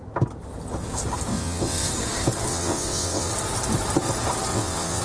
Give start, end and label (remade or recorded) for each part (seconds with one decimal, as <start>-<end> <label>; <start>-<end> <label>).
0.0-1.3 recorded; 1.3-1.9 remade; 1.9-2.5 recorded; 2.5-3.3 remade; 3.3-4.5 recorded; 4.5-5.0 remade